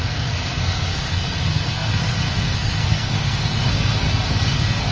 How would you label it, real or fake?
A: fake